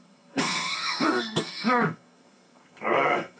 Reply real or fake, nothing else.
fake